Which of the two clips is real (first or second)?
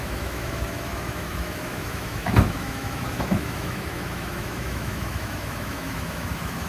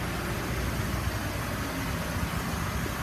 second